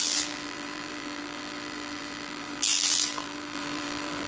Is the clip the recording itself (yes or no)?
no